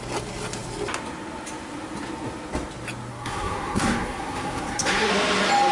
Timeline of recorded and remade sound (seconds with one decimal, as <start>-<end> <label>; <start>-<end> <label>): 0.0-3.1 recorded; 3.1-5.1 remade; 5.1-5.7 recorded